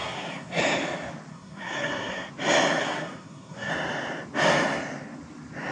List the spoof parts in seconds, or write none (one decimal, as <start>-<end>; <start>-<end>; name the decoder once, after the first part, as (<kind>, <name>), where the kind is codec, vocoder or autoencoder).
0.0-0.6 (codec, SNAC); 1.3-2.3; 2.8-3.7